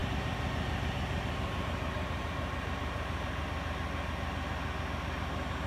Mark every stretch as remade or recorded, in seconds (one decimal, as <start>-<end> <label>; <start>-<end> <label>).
0.0-3.4 remade; 3.4-5.7 recorded